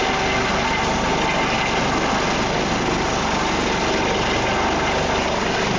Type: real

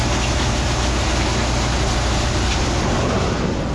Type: real